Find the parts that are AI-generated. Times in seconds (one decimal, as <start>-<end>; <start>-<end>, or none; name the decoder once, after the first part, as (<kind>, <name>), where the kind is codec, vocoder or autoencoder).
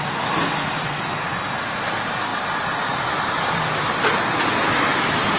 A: none